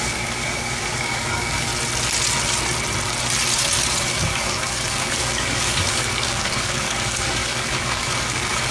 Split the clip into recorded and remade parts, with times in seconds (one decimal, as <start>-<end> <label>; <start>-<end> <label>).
0.0-1.7 remade; 1.7-4.1 recorded; 4.1-8.7 remade